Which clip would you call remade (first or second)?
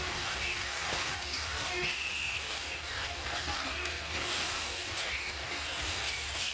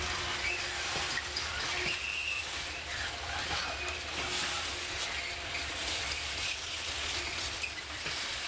first